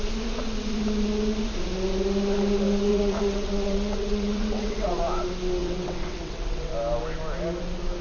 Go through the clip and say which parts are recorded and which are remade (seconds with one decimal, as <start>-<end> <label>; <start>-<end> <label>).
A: 0.0-2.9 recorded; 2.9-5.0 remade; 5.0-5.6 recorded; 5.6-6.7 remade; 6.7-8.0 recorded